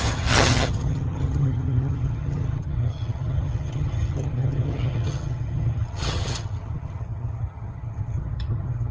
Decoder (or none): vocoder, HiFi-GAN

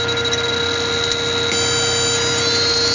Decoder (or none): none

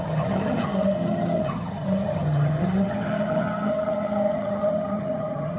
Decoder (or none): vocoder, HiFi-GAN